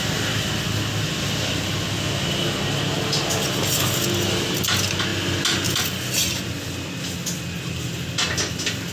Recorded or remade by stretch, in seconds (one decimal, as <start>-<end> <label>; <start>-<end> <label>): 0.0-8.9 recorded